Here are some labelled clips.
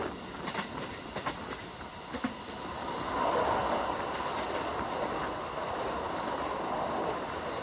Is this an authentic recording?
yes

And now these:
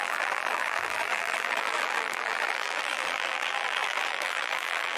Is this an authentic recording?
no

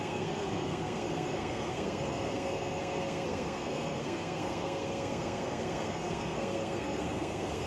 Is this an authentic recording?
no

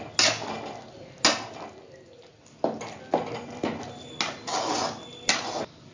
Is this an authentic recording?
yes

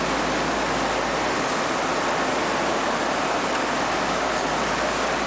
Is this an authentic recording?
yes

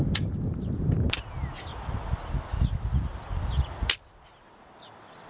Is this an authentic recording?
yes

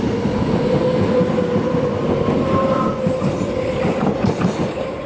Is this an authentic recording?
yes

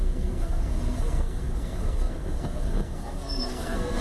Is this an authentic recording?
no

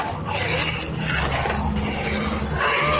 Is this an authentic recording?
yes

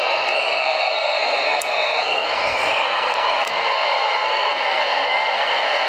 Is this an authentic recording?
no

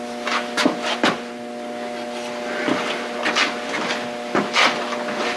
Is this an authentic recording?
yes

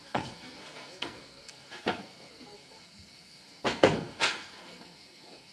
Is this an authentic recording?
no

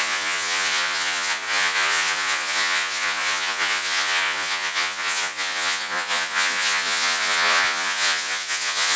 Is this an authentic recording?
no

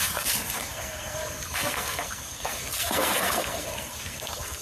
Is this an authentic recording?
no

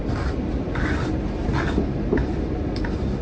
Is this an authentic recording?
yes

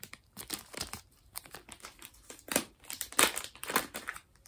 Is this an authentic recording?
no